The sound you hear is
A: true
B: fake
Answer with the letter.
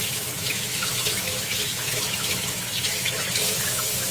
B